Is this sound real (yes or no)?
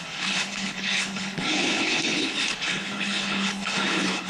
no